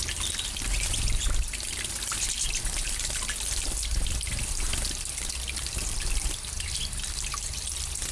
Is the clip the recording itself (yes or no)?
yes